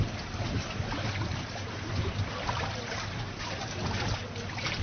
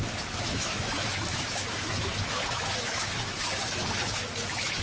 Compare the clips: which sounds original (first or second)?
first